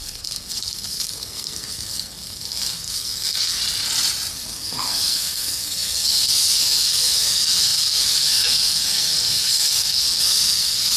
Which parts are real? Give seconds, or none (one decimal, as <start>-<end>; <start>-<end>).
3.6-4.3